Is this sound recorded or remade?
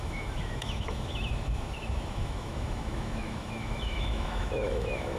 remade